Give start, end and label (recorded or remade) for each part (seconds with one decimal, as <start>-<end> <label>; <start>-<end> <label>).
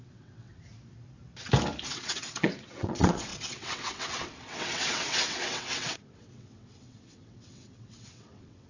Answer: 0.0-0.5 remade; 0.5-1.8 recorded; 1.8-8.7 remade